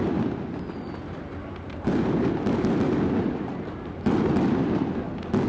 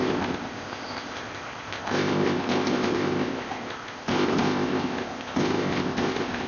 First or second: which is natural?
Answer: first